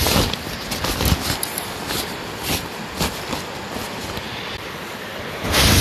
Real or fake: real